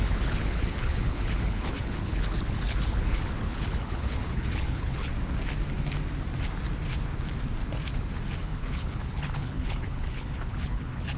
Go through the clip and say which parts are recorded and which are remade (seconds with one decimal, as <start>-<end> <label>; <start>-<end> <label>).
0.0-5.1 remade; 5.1-8.4 recorded; 8.4-11.2 remade